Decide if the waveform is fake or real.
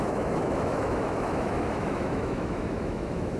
fake